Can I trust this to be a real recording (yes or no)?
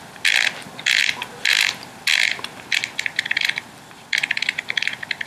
yes